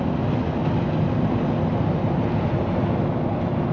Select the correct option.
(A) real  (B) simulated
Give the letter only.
A